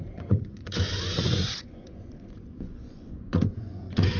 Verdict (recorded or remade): remade